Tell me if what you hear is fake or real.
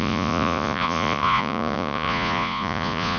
fake